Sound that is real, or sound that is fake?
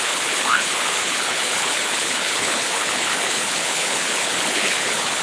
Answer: fake